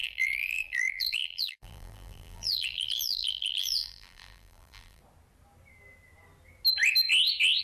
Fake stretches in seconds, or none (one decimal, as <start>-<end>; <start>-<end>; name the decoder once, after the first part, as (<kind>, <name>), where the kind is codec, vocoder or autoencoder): 0.0-5.0 (vocoder, BigVGAN v2)